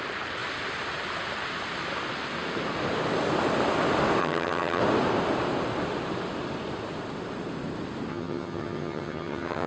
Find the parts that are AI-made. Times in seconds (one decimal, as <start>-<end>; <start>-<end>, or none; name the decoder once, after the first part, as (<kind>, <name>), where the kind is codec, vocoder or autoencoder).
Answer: 4.2-4.8 (vocoder, HiFi-GAN); 8.1-9.7